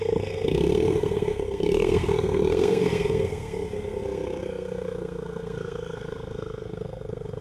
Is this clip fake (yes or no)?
yes